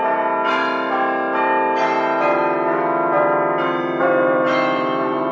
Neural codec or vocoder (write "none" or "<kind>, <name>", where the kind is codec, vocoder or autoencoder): vocoder, BigVGAN v2